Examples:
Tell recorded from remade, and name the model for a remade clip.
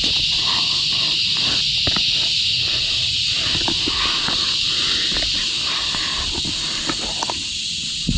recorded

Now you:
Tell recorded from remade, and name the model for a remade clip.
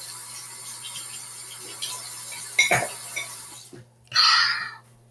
recorded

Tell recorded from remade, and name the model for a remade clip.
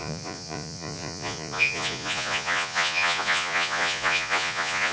remade, vocoder, Vocos